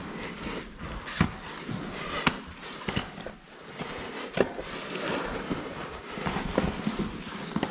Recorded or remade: recorded